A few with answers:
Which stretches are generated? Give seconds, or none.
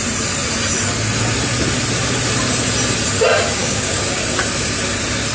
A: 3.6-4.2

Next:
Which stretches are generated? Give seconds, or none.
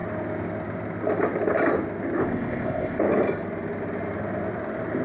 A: 2.2-3.0